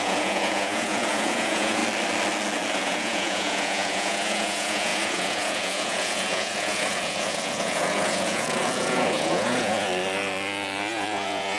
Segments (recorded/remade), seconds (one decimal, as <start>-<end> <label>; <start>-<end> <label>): 0.0-1.8 remade; 1.8-2.8 recorded; 2.8-9.9 remade; 9.9-10.9 recorded; 10.9-11.6 remade

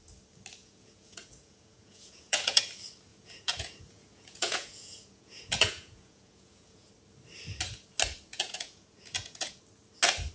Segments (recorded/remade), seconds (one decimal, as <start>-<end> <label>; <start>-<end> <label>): 0.0-0.6 recorded; 0.6-2.6 remade; 2.6-3.1 recorded; 3.1-6.9 remade; 6.9-8.3 recorded; 8.3-9.6 remade; 9.6-10.3 recorded

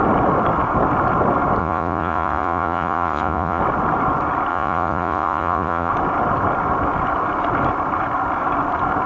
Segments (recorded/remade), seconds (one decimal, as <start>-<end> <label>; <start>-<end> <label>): 0.0-1.6 recorded; 1.6-3.6 remade; 3.6-4.5 recorded; 4.5-5.9 remade; 5.9-9.1 recorded

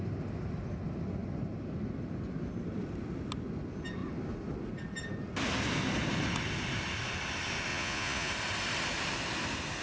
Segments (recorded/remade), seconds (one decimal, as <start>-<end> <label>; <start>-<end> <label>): 0.0-7.7 recorded; 7.7-8.3 remade; 8.3-9.8 recorded

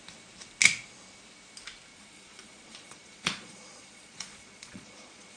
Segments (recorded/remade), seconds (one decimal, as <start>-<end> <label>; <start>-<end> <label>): 0.0-1.9 recorded; 1.9-5.4 remade